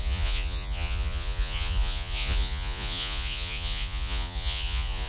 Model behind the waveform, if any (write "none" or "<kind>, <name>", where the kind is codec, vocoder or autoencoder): vocoder, Vocos